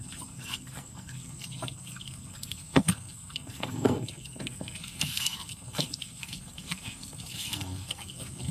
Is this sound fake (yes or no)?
yes